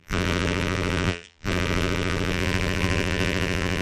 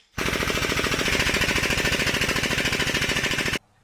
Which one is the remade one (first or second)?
first